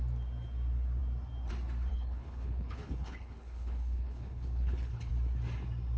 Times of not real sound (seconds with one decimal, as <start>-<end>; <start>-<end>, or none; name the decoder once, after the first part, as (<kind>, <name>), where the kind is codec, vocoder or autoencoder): 1.9-5.1 (codec, HILCodec)